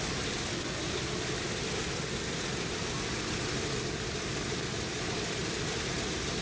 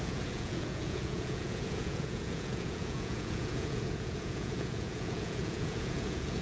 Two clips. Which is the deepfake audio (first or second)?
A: second